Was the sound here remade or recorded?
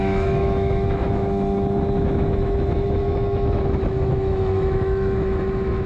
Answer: remade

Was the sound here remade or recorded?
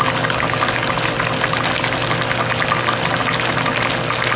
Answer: recorded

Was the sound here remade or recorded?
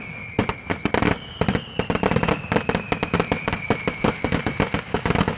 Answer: recorded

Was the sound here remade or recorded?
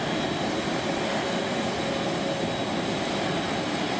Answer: recorded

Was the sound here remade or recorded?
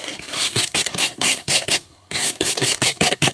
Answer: remade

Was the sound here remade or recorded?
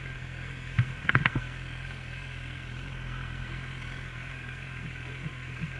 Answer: remade